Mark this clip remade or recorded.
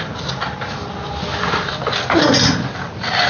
recorded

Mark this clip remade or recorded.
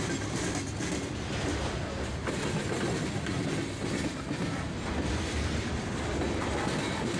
recorded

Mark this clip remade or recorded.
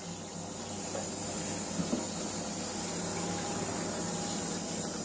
recorded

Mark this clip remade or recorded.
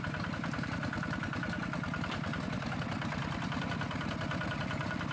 recorded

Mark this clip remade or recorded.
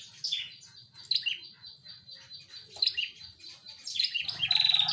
recorded